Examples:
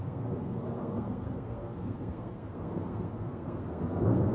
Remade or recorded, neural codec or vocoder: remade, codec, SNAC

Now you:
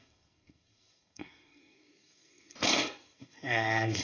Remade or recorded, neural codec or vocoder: remade, codec, SNAC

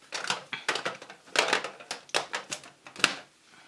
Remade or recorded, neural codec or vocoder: recorded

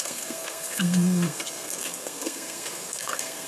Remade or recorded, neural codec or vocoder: remade, codec, SNAC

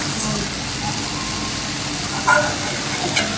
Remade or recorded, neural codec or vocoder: recorded